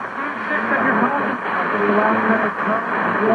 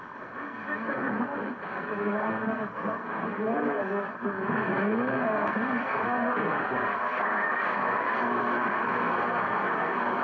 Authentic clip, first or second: first